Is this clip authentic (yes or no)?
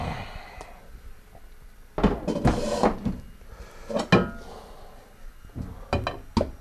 yes